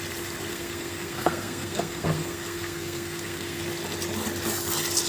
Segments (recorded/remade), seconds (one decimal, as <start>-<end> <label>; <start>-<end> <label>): 0.0-0.5 recorded; 0.5-3.6 remade; 3.6-5.1 recorded